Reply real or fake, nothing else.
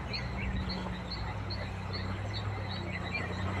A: real